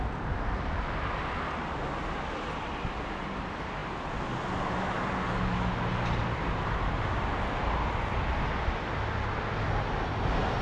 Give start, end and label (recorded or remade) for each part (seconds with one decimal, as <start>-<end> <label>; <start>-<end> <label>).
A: 0.0-10.6 recorded